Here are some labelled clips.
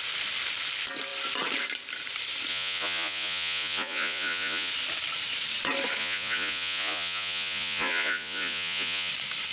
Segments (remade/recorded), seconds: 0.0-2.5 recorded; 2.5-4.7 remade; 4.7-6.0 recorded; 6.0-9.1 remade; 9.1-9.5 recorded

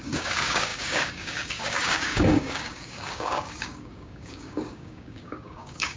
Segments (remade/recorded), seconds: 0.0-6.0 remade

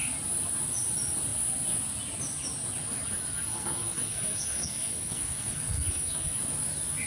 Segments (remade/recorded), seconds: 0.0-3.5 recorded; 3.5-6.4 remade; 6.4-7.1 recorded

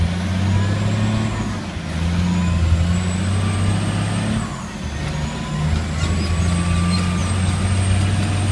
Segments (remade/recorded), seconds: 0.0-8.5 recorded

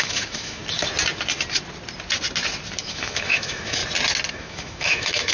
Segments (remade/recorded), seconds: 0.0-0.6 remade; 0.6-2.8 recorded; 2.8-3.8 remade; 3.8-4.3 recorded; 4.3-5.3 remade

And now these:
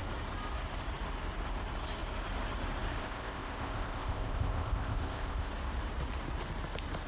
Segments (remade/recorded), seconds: 0.0-3.0 recorded; 3.0-5.5 remade; 5.5-7.1 recorded

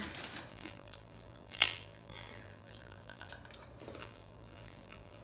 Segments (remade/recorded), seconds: 0.0-0.5 recorded; 0.5-3.3 remade; 3.3-4.0 recorded; 4.0-5.2 remade

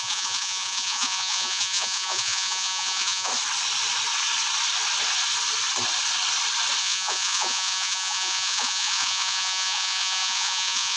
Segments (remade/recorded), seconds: 0.0-3.3 remade; 3.3-6.8 recorded; 6.8-11.0 remade